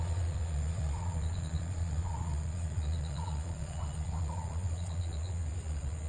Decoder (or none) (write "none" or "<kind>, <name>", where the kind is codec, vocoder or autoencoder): vocoder, Vocos